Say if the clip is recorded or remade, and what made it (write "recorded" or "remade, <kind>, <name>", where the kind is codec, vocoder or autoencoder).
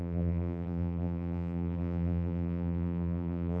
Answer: remade, vocoder, BigVGAN v2